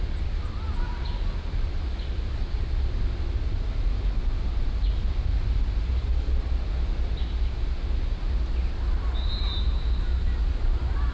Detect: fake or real real